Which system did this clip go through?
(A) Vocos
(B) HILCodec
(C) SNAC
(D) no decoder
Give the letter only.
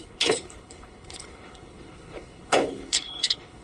B